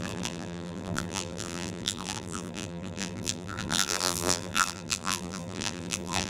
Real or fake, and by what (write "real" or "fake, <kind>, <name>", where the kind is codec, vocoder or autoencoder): fake, vocoder, BigVGAN v2